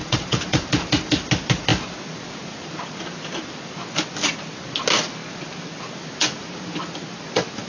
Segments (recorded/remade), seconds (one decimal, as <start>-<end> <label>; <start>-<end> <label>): 0.0-0.7 remade; 0.7-7.7 recorded